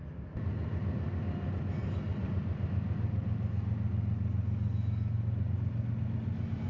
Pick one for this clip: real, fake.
real